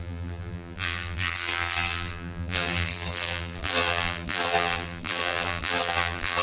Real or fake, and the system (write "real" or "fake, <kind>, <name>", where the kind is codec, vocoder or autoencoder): fake, vocoder, BigVGAN v2